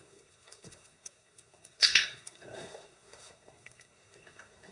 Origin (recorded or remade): remade